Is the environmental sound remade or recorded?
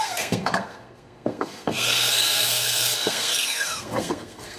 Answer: remade